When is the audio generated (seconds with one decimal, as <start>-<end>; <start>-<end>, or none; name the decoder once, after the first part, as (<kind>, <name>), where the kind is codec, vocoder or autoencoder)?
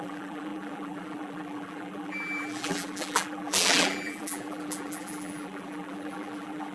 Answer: 0.0-6.7 (vocoder, BigVGAN v2)